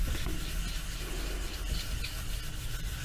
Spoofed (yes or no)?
no